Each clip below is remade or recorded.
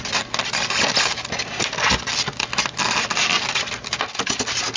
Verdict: recorded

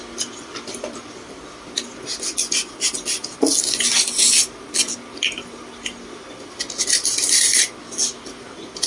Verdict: recorded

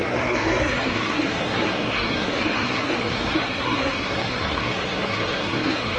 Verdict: remade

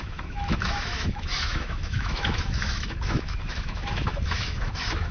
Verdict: remade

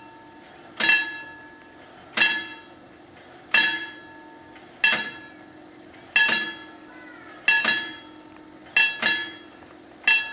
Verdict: recorded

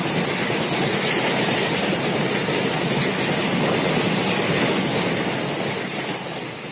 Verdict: recorded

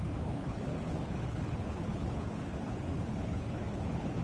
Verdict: remade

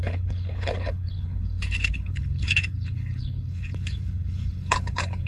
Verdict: remade